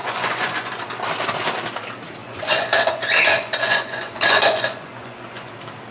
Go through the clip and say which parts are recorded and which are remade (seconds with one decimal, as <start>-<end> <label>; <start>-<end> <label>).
0.0-0.8 remade; 0.8-2.2 recorded; 2.2-5.5 remade; 5.5-5.9 recorded